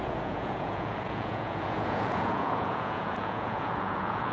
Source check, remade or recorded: remade